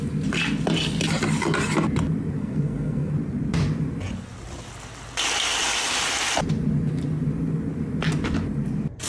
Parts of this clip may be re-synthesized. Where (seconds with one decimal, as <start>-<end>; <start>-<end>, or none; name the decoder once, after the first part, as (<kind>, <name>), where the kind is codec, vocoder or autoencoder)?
2.4-3.1 (codec, SNAC)